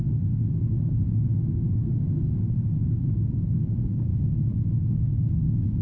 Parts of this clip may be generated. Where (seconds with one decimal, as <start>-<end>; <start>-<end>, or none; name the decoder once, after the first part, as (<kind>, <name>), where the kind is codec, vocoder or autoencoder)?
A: 1.0-2.4 (codec, DAC); 3.5-4.1; 5.2-5.8